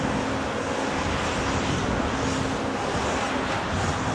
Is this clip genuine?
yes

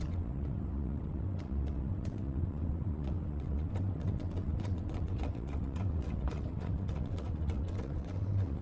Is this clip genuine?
no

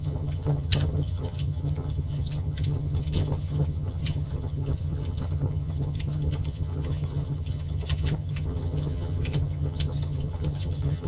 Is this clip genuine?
no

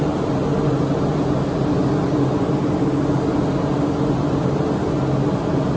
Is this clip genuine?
yes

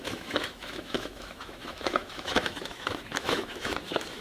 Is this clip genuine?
no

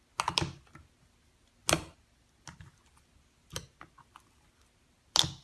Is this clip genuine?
yes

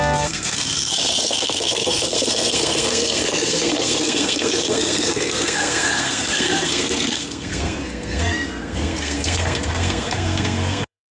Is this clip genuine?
no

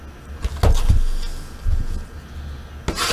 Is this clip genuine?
yes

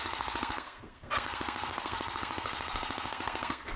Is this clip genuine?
no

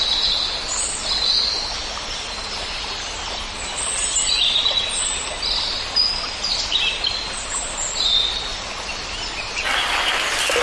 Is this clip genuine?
yes